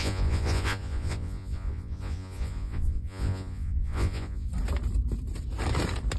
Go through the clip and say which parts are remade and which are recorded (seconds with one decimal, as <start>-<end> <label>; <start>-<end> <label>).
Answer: 0.0-4.5 remade; 4.5-6.2 recorded